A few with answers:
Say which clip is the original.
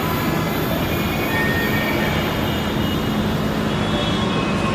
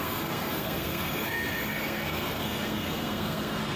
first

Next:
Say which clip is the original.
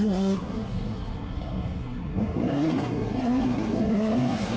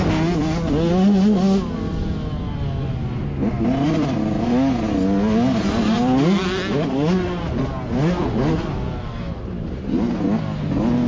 second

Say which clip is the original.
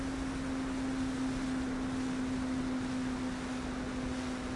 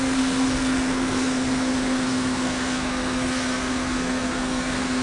first